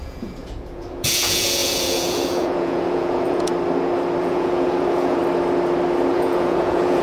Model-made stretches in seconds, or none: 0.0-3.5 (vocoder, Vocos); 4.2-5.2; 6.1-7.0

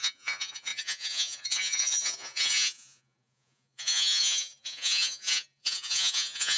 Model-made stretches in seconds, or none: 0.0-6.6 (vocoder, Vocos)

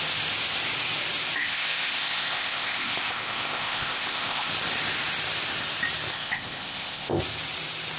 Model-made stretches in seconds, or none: 1.4-4.5 (codec, ZipCodec); 6.1-7.2

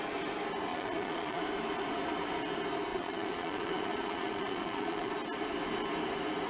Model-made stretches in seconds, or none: 0.7-1.4 (vocoder, Vocos); 2.9-5.1

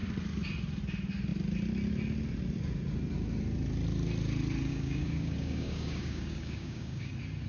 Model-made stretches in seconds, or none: 4.7-7.1 (codec, DAC)